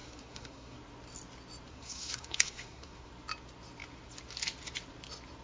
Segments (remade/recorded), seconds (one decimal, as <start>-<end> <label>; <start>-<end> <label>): 0.0-0.8 remade; 0.8-1.7 recorded; 1.7-3.1 remade; 3.1-5.4 recorded